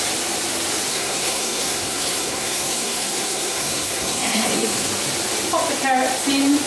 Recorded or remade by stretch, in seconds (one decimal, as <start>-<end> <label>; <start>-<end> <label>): 0.0-0.9 recorded; 0.9-4.9 remade; 4.9-6.7 recorded